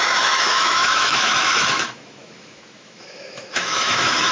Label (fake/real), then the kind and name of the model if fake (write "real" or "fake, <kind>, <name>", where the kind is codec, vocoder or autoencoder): fake, autoencoder, DAC-VAE